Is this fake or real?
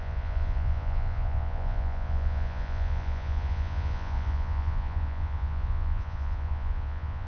fake